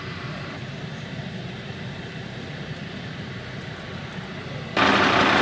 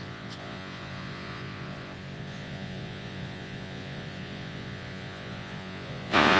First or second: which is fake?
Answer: second